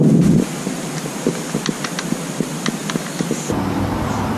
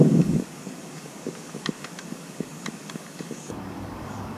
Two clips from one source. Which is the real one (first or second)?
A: first